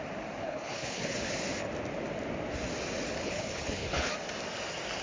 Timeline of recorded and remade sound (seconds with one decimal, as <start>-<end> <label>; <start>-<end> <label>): 0.0-0.4 recorded; 0.4-1.3 remade; 1.3-3.2 recorded; 3.2-4.1 remade; 4.1-5.0 recorded